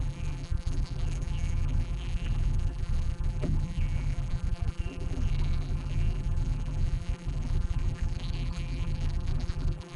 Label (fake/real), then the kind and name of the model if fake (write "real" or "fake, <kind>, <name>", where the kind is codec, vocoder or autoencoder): fake, vocoder, BigVGAN v2